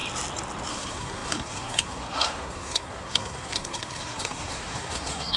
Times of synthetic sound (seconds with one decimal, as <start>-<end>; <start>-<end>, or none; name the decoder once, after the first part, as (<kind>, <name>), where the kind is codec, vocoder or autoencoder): 0.7-5.4 (codec, SNAC)